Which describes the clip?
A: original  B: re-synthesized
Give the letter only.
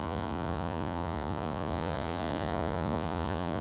B